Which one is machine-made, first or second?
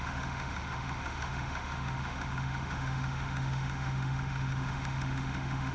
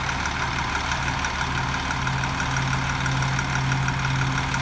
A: first